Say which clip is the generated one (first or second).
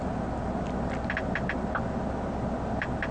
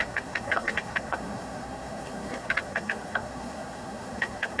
second